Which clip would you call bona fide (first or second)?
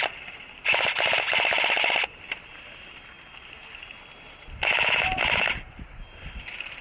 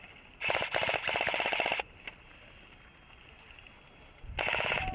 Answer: first